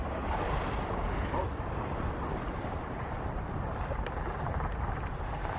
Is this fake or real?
real